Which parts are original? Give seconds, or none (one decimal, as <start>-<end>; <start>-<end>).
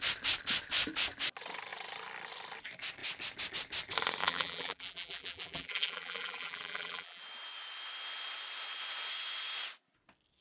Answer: 0.0-4.2; 7.2-10.4